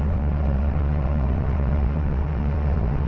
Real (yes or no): no